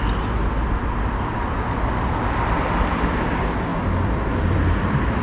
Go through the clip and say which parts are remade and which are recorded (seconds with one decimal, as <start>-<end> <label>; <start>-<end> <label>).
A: 0.0-5.2 recorded

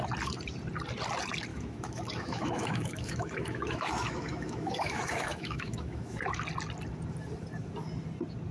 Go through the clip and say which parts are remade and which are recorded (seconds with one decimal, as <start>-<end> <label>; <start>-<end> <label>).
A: 0.0-1.5 recorded; 1.5-6.2 remade; 6.2-8.5 recorded